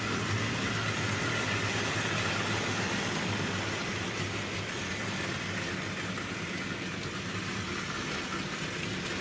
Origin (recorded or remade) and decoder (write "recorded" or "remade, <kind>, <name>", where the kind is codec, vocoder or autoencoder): recorded